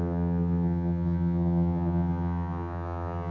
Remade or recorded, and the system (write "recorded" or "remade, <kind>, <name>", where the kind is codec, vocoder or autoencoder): remade, vocoder, HiFi-GAN